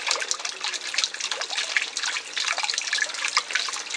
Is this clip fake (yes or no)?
no